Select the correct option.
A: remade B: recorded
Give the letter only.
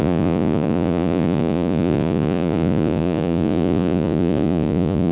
A